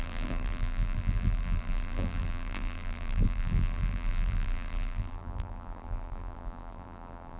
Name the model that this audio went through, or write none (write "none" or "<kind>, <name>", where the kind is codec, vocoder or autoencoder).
vocoder, BigVGAN v2